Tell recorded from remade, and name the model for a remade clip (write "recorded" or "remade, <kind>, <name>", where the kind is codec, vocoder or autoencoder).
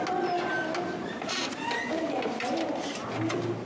recorded